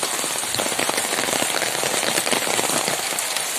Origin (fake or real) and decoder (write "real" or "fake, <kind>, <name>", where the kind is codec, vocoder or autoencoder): real